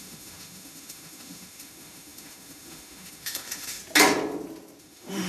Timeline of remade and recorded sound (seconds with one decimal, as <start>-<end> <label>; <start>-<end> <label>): 0.0-3.8 remade; 3.8-4.8 recorded; 4.8-5.3 remade